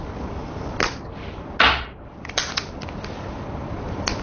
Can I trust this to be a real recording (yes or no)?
yes